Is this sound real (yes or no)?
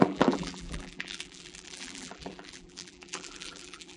no